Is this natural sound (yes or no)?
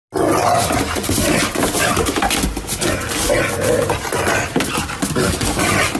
yes